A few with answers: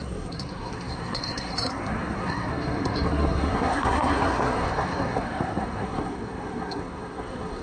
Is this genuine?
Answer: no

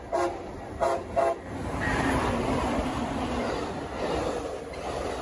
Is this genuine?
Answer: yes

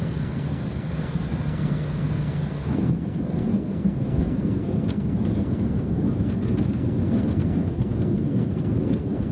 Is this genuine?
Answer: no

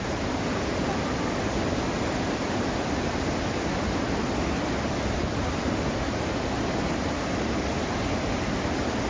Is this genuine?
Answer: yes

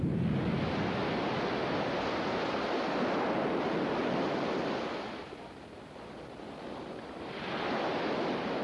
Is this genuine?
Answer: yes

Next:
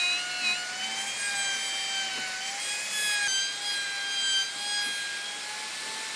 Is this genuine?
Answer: yes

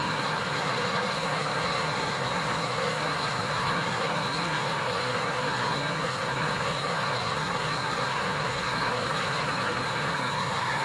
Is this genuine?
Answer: no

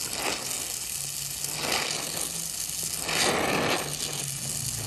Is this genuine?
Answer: yes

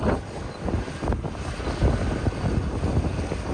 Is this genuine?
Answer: yes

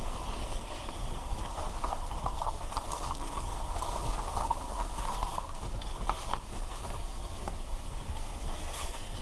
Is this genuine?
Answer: no